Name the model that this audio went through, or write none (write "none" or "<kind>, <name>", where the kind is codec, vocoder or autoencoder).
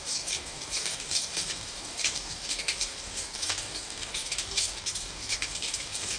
codec, DAC